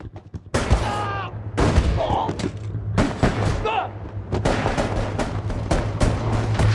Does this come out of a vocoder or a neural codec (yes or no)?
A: no